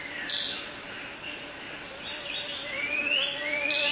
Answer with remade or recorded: recorded